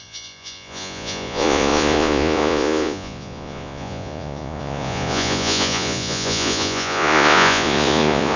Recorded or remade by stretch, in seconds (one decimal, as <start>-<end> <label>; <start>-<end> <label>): 0.0-8.4 remade